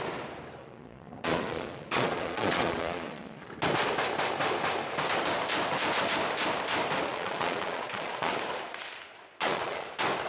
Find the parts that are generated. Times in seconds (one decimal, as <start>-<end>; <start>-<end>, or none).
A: 0.6-3.5; 7.1-8.3; 9.1-9.9